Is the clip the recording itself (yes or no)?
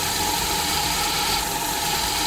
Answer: yes